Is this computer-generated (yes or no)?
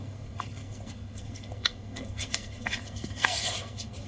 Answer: yes